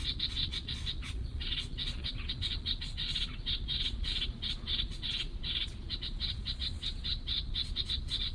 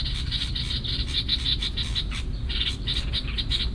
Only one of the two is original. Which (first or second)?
second